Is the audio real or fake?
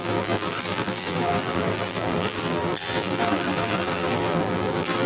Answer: fake